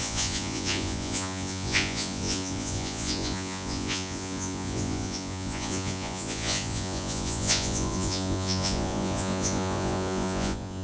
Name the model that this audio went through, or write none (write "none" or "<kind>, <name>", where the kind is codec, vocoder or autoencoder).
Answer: vocoder, Vocos